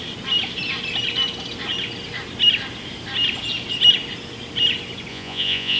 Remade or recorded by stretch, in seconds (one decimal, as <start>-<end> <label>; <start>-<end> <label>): 0.0-5.1 recorded; 5.1-5.8 remade